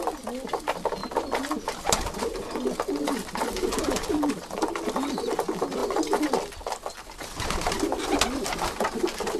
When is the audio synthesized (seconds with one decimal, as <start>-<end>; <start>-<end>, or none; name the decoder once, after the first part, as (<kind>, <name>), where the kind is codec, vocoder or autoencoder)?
none